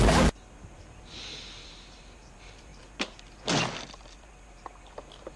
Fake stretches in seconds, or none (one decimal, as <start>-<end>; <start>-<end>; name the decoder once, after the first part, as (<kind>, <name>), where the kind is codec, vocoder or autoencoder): none